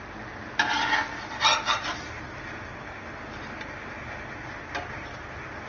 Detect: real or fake real